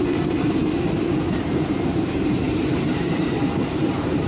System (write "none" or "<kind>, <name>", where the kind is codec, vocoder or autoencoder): vocoder, BigVGAN v2